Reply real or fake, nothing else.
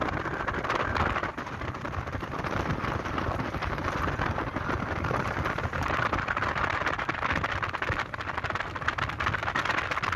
fake